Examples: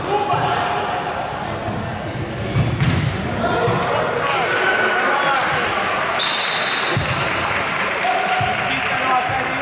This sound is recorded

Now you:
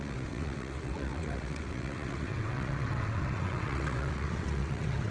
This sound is remade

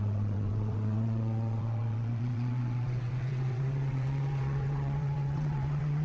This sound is remade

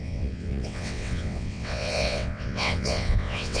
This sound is remade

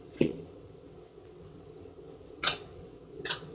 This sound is remade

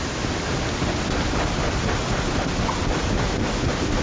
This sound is recorded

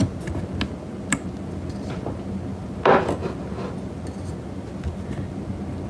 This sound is recorded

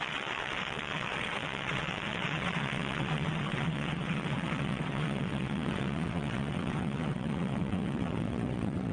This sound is remade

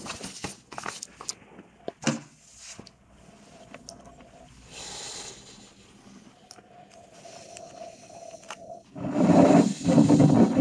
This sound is recorded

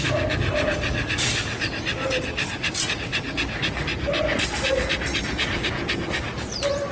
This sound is recorded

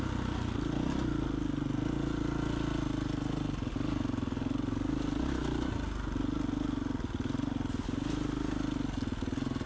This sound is recorded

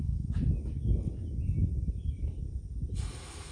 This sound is recorded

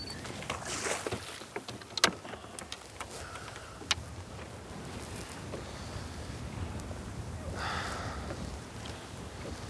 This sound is recorded